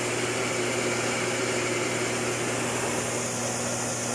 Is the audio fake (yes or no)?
no